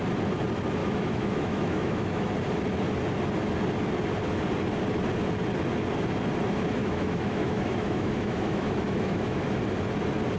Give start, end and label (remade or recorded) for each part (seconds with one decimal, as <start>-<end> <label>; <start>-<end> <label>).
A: 0.0-0.8 recorded; 0.8-2.3 remade; 2.3-6.8 recorded; 6.8-9.6 remade; 9.6-10.4 recorded